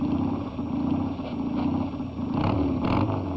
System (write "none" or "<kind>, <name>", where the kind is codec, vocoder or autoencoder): none